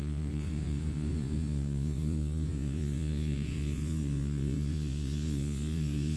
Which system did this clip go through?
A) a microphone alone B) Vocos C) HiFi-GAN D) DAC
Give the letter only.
B